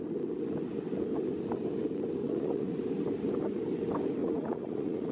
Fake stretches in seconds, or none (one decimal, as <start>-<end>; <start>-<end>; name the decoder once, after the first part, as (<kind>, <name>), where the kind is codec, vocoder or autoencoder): 2.2-2.7 (vocoder, Vocos); 4.2-5.1